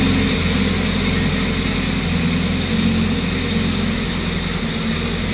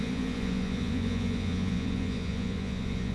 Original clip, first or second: first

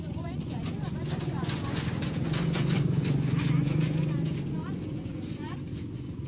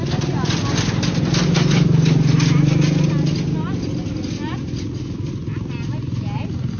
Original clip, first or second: second